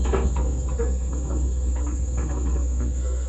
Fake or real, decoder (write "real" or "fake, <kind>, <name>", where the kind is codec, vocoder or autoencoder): fake, codec, SNAC